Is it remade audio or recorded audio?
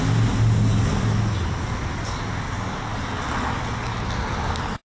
recorded